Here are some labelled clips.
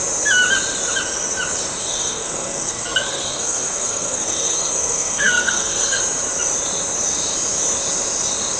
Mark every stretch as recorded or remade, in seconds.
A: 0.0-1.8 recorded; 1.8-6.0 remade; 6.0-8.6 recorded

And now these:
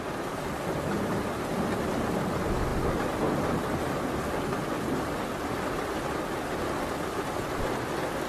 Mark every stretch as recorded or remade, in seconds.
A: 0.0-8.3 recorded

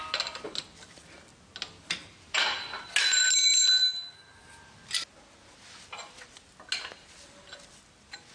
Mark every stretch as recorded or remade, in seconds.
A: 0.0-8.3 recorded

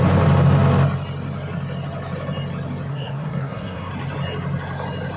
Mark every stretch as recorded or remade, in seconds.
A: 0.0-2.9 recorded; 2.9-3.9 remade; 3.9-5.2 recorded

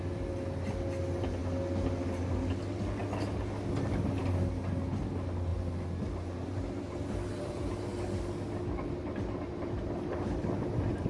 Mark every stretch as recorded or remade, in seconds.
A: 0.0-11.1 recorded

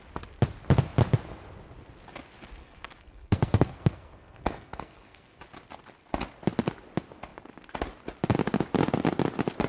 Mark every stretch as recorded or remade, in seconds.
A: 0.0-2.6 recorded; 2.6-5.4 remade; 5.4-9.7 recorded